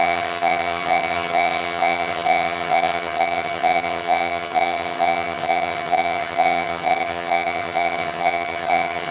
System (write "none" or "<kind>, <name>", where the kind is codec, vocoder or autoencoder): vocoder, HiFi-GAN